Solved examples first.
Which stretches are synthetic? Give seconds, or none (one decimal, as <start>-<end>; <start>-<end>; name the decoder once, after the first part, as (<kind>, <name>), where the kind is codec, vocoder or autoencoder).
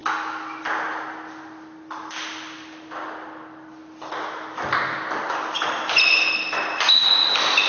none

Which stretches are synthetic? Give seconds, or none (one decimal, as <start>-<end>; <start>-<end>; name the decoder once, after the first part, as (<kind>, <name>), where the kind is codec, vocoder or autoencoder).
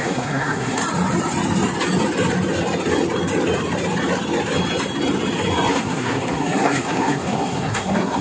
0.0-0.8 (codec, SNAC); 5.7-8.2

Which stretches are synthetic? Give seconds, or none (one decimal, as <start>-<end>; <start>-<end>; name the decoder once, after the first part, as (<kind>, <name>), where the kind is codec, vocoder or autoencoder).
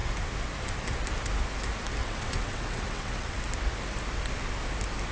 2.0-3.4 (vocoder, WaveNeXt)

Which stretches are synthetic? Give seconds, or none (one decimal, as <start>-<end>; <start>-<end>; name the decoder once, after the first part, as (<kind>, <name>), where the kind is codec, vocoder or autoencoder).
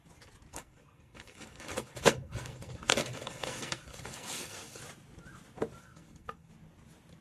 0.5-4.8 (codec, SNAC); 5.8-6.5